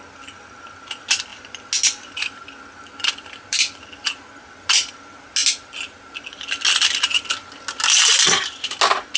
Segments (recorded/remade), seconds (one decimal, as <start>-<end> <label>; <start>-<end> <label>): 0.0-9.2 recorded